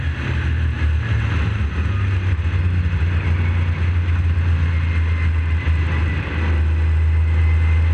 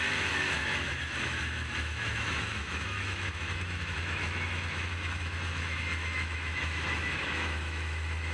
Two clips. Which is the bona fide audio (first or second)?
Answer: first